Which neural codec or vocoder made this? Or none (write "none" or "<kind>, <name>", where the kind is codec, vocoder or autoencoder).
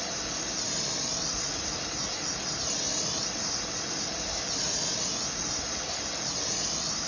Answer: none